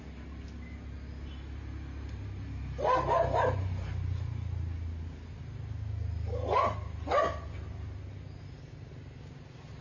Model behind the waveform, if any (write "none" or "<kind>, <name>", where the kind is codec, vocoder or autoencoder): none